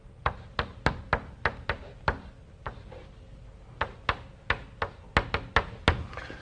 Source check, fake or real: real